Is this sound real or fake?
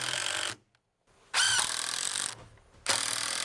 real